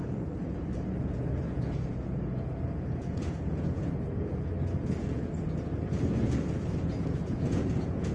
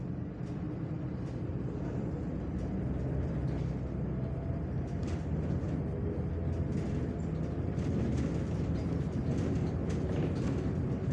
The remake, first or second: first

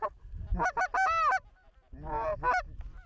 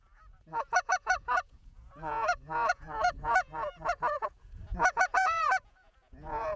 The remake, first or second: second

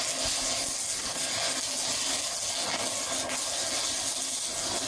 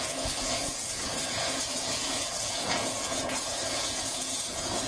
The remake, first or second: second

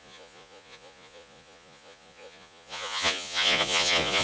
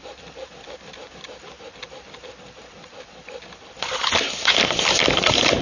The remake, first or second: first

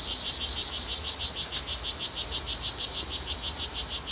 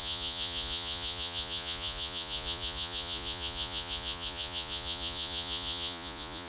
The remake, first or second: second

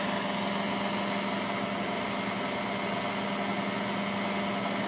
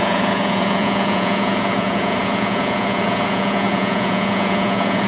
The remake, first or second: second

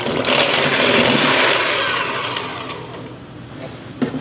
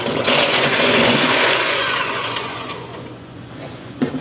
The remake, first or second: second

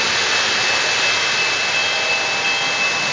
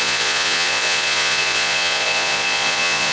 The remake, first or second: second